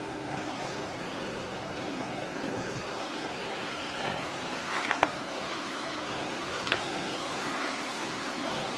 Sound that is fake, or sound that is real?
fake